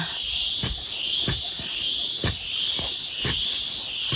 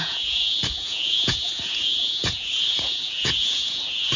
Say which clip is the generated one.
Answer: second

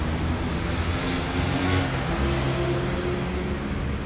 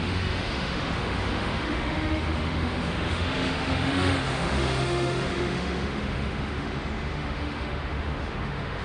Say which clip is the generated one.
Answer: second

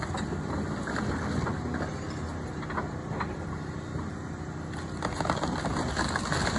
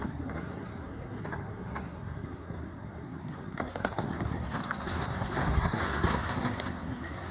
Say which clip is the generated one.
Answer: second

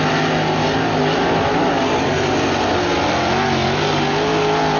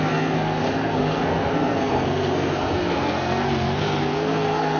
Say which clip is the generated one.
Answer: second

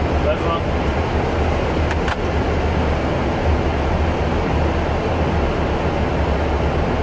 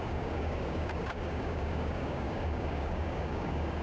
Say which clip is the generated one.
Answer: second